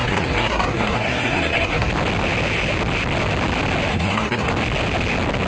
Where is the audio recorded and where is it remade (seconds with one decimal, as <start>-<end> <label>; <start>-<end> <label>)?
0.0-1.9 remade; 1.9-3.9 recorded; 3.9-4.5 remade; 4.5-5.5 recorded